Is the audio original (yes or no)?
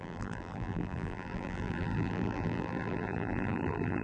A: no